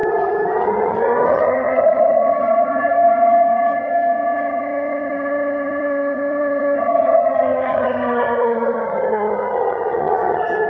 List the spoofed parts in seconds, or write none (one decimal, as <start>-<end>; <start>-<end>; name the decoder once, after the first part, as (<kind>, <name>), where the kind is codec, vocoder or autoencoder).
0.0-10.7 (vocoder, HiFi-GAN)